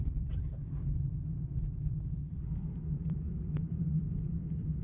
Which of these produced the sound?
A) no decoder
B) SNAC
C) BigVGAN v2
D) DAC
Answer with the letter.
C